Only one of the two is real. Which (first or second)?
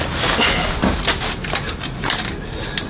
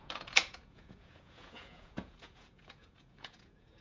first